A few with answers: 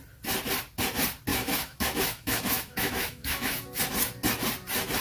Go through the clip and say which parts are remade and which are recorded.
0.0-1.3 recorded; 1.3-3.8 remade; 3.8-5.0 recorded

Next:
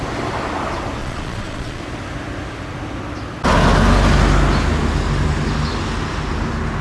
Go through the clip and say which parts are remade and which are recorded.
0.0-1.0 recorded; 1.0-1.8 remade; 1.8-6.8 recorded

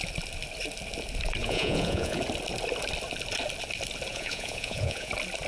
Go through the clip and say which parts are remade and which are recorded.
0.0-1.4 recorded; 1.4-2.2 remade; 2.2-4.1 recorded; 4.1-5.1 remade; 5.1-5.5 recorded